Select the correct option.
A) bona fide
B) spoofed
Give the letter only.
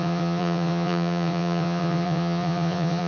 B